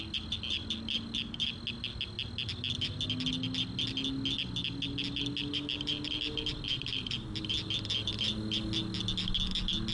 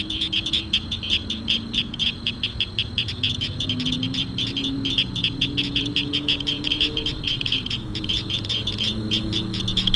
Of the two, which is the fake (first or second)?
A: second